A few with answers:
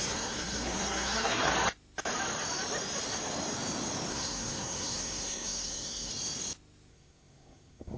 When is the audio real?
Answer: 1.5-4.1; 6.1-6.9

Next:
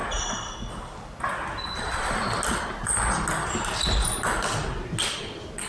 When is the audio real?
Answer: 0.0-5.7

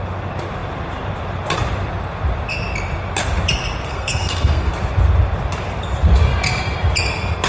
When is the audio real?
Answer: 0.0-3.9; 4.7-7.5

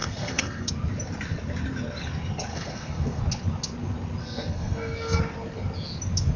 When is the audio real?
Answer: 0.7-2.5; 3.2-4.2; 5.2-6.4

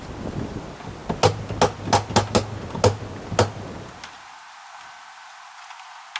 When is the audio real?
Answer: 0.0-6.2

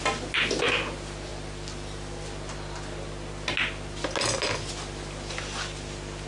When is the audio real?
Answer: 0.0-6.3